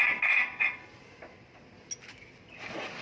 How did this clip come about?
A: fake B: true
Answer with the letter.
B